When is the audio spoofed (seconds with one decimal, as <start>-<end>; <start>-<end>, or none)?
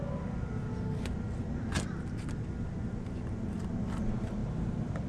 none